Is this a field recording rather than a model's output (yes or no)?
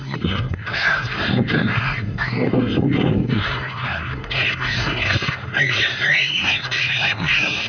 no